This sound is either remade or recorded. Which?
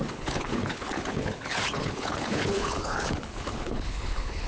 remade